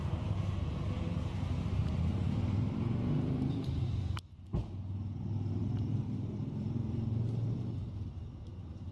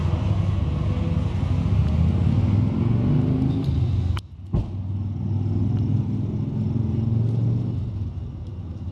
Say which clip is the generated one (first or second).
first